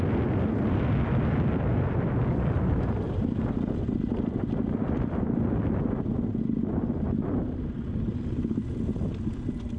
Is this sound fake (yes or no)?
no